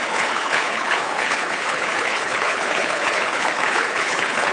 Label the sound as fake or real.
fake